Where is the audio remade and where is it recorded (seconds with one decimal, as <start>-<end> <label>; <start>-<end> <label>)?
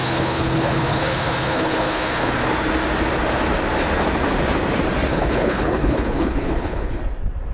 0.0-2.3 remade; 2.3-5.1 recorded; 5.1-7.0 remade; 7.0-7.5 recorded